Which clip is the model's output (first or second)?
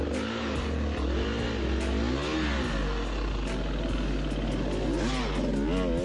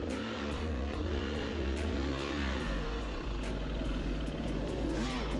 second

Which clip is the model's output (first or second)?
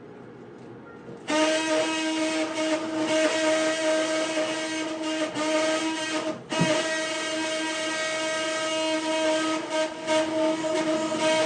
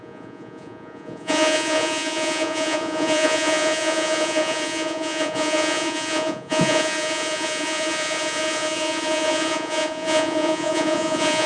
second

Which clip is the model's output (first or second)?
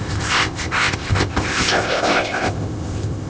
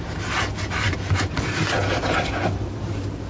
first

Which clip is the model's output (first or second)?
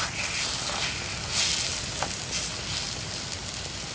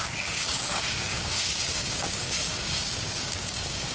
second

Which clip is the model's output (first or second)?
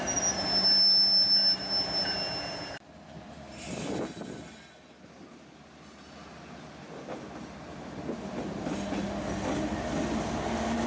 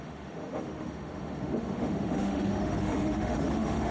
second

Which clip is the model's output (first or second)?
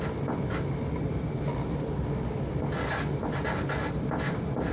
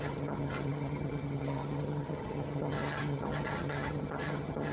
second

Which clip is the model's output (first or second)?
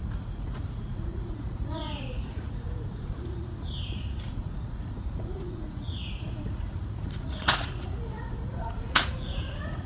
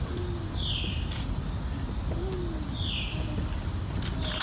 first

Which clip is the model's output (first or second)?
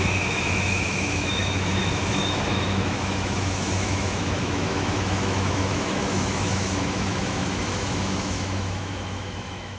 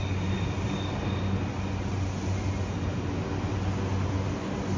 first